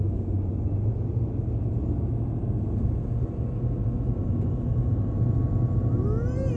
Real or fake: real